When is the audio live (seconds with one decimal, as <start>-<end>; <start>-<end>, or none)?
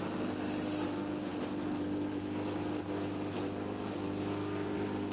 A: 0.0-5.1